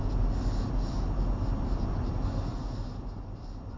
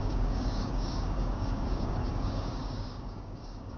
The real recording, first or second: first